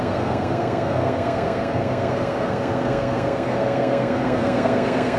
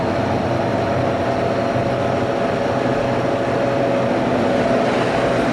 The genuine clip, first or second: second